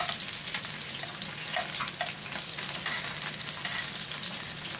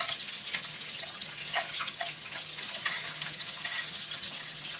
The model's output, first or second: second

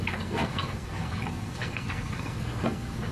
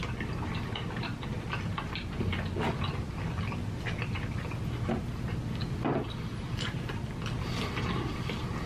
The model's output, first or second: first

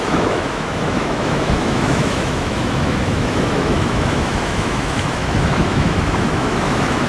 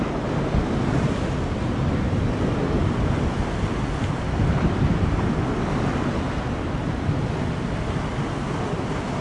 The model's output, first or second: first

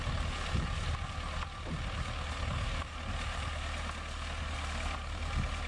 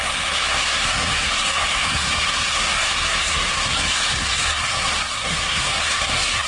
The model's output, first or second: second